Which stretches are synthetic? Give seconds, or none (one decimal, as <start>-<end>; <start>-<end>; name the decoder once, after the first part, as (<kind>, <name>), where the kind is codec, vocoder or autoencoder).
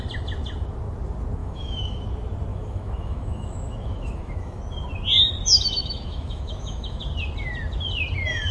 1.4-2.0 (autoencoder, DAC-VAE); 2.5-4.6; 5.8-7.0